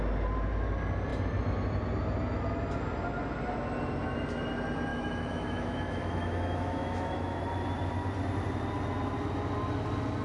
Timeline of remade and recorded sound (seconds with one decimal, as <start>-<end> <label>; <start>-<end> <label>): 0.0-4.9 recorded; 4.9-7.4 remade; 7.4-10.2 recorded